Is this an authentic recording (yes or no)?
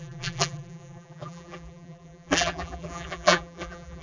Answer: no